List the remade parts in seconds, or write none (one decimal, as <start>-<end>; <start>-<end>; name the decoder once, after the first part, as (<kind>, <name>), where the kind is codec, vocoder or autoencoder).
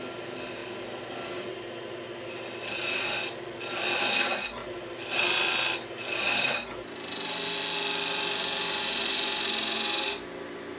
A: none